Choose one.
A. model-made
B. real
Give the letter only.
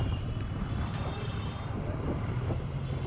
A